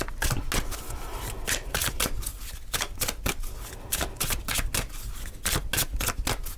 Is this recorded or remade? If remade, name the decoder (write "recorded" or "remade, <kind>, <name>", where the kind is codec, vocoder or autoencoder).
recorded